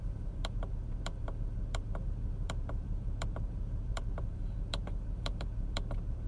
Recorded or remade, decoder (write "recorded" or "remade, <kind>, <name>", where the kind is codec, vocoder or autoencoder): remade, vocoder, BigVGAN v2